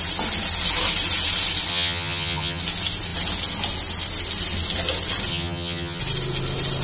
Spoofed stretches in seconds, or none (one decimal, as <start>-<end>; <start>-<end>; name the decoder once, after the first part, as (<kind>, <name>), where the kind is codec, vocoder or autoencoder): 1.7-2.6 (vocoder, HiFi-GAN); 5.3-6.0